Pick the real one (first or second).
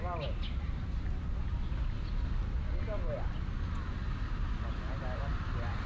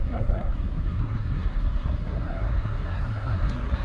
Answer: first